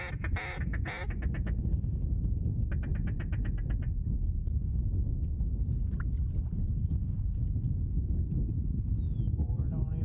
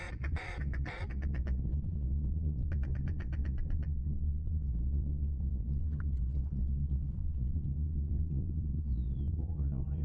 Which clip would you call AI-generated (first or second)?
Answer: second